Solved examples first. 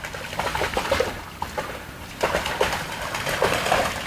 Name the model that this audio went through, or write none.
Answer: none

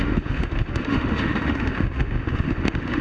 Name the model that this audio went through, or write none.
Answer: autoencoder, DAC-VAE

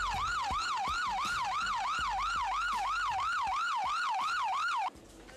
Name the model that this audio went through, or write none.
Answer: none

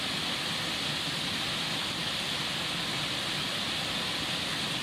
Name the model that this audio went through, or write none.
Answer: none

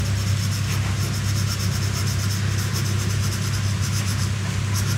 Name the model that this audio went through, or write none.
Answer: none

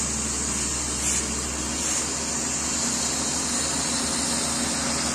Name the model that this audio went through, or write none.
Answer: none